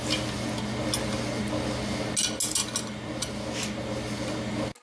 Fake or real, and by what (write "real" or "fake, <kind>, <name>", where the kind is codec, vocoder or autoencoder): real